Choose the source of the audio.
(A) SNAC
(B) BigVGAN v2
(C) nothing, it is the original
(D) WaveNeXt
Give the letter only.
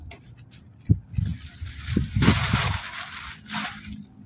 C